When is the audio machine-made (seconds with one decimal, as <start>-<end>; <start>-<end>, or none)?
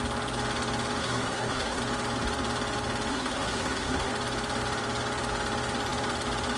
1.0-1.8; 3.1-4.1